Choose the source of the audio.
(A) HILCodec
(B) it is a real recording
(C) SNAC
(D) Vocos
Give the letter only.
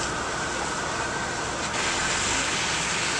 B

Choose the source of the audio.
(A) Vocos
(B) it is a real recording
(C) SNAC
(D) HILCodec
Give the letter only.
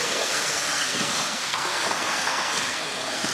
C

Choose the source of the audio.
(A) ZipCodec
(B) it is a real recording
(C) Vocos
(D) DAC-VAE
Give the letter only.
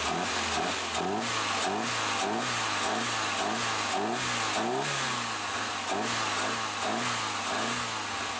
B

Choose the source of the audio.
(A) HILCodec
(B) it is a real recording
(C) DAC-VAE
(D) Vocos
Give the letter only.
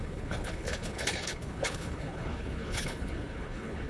A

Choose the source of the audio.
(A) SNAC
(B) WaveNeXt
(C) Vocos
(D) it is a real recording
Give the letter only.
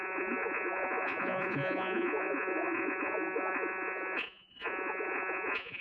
C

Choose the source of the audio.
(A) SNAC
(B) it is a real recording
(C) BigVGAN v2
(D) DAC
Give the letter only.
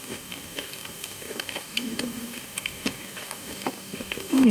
D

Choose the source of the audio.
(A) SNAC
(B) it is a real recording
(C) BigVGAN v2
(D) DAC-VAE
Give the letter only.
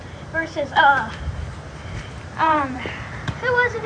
C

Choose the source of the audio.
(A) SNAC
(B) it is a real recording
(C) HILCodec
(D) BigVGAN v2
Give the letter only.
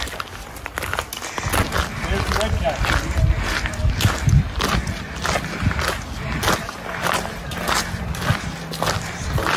B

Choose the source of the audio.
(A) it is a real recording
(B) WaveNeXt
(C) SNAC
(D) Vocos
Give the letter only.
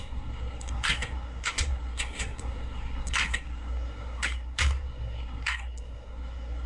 C